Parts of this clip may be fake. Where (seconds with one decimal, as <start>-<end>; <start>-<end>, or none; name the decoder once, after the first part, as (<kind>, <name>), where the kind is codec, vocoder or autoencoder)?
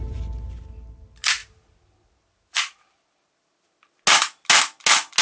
none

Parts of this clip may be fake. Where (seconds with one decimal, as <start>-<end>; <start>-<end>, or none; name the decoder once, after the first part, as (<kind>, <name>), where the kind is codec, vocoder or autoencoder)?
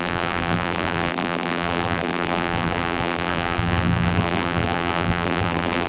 0.0-5.9 (vocoder, BigVGAN v2)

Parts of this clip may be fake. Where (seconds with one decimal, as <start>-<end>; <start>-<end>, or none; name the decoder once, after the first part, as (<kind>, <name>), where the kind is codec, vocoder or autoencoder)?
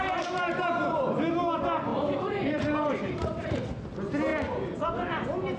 1.9-3.9 (vocoder, BigVGAN v2)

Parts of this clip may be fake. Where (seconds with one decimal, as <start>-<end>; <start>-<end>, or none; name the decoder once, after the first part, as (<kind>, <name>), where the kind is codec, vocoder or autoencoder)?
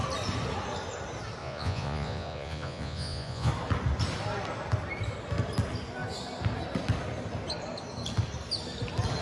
1.4-3.5 (vocoder, Vocos)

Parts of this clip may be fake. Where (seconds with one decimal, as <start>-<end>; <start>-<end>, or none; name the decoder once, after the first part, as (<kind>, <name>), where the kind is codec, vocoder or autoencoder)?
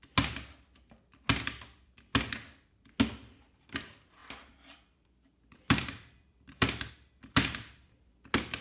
4.2-6.9 (vocoder, BigVGAN v2)